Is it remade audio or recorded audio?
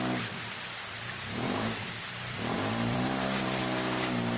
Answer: remade